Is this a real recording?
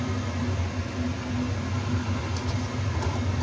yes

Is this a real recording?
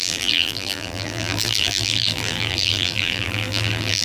no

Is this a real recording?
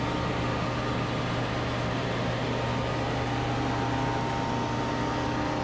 yes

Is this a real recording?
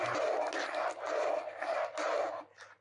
yes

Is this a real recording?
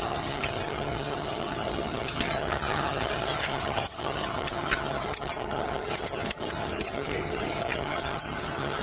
no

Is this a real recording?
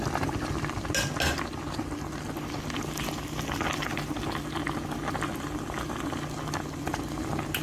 yes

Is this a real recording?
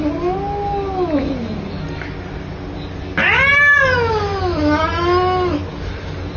yes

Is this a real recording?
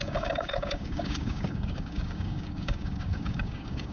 no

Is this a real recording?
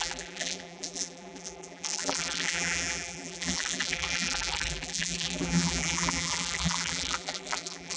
no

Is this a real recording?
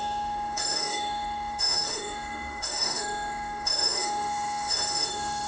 no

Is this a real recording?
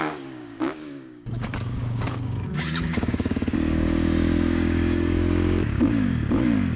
no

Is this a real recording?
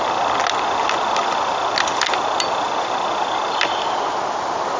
yes